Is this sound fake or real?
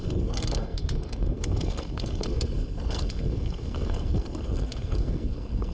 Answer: fake